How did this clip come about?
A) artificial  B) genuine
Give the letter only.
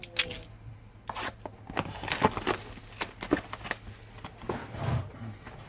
B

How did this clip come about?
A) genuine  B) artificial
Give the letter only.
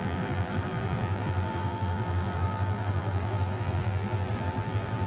B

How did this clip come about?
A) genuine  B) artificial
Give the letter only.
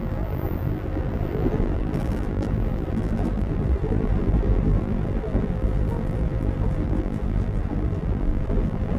B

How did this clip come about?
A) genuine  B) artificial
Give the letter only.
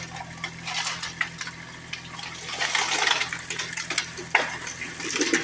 A